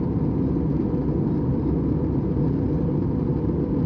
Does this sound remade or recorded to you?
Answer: recorded